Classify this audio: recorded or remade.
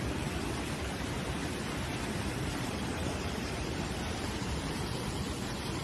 remade